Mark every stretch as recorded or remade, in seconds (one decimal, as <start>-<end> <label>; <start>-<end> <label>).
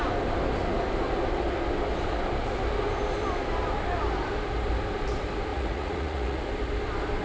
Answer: 0.0-5.5 recorded; 5.5-6.4 remade; 6.4-7.2 recorded